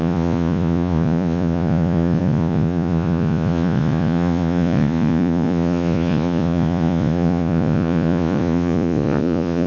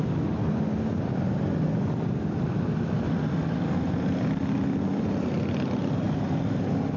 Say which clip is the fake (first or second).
first